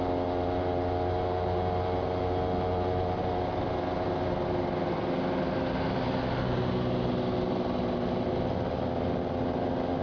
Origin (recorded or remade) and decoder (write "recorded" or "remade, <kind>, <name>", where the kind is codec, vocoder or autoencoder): recorded